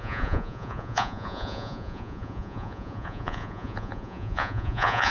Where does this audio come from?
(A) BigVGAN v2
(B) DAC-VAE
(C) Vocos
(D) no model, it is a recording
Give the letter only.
C